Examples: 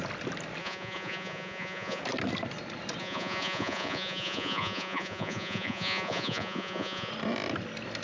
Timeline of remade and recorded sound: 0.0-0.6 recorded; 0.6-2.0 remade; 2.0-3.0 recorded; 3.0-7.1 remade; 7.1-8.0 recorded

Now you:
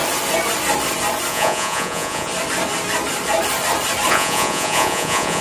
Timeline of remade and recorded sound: 0.0-1.3 recorded; 1.3-2.3 remade; 2.3-4.1 recorded; 4.1-5.4 remade

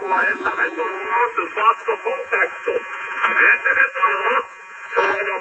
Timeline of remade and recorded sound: 0.0-1.2 remade; 1.2-1.7 recorded; 1.7-5.4 remade

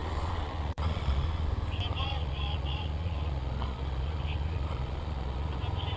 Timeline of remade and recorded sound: 0.0-1.5 remade; 1.5-2.0 recorded; 2.0-5.6 remade; 5.6-6.0 recorded

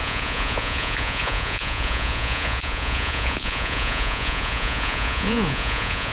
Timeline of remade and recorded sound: 0.0-6.1 remade

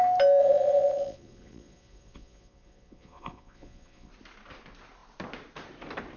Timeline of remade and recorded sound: 0.0-0.4 recorded; 0.4-4.1 remade; 4.1-6.2 recorded

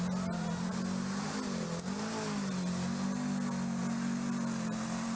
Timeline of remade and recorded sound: 0.0-5.2 recorded